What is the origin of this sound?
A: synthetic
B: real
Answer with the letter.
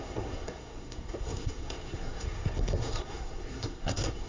A